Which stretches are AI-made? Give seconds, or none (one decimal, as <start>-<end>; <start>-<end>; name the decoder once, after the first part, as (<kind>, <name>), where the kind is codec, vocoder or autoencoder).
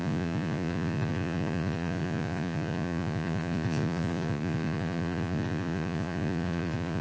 0.0-7.0 (vocoder, Vocos)